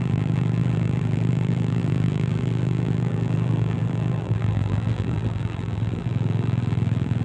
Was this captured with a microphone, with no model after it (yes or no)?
no